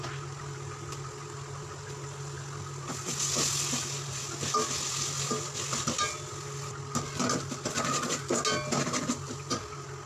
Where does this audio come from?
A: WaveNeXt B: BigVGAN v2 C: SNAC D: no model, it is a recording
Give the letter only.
D